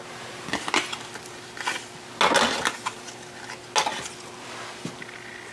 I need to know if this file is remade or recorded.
recorded